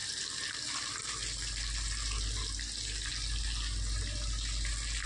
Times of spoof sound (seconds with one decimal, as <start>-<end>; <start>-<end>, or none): none